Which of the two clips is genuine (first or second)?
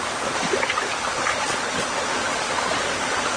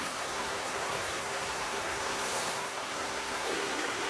first